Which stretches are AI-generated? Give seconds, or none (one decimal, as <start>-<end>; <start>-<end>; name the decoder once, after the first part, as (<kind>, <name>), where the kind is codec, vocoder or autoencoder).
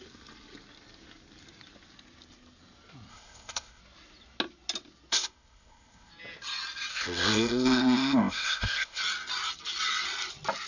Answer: 3.1-3.8 (codec, ZipCodec); 5.1-6.1; 6.9-9.0